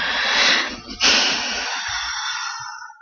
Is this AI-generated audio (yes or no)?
no